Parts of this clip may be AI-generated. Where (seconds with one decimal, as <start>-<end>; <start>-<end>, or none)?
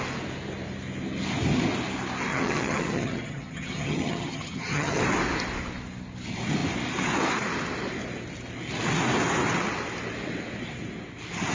2.3-5.0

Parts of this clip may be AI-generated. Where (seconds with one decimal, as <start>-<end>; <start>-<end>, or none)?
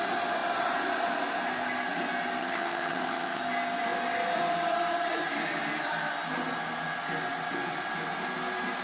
2.4-3.4